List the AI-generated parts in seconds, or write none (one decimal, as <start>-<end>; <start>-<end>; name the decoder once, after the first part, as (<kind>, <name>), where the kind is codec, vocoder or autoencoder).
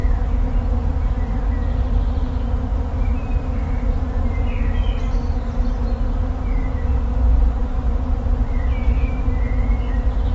2.7-3.3 (vocoder, BigVGAN v2); 7.6-8.4